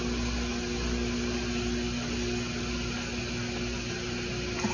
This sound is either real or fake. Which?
real